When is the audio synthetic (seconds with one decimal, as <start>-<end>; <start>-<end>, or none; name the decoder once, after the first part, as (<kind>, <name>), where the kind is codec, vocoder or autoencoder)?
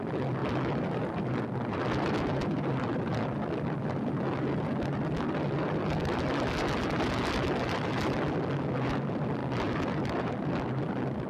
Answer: none